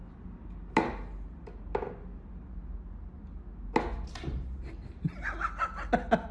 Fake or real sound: real